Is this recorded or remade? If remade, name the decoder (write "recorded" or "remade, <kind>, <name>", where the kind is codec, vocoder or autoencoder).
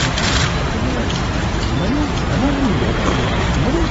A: remade, vocoder, BigVGAN v2